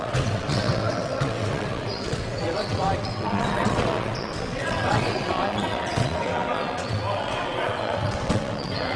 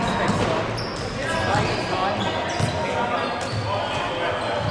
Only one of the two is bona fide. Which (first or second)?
second